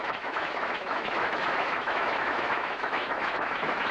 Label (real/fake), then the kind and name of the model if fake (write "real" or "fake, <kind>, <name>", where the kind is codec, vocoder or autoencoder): fake, autoencoder, DAC-VAE